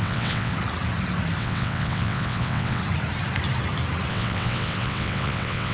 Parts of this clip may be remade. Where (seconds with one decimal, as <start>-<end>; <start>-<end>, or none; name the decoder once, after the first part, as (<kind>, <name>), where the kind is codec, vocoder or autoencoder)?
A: 0.0-0.5 (vocoder, WaveNeXt); 1.4-2.8; 4.1-5.7